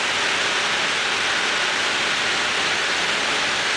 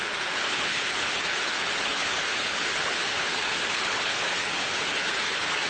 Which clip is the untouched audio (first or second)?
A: first